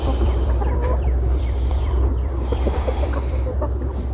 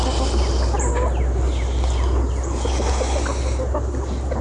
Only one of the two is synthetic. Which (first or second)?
first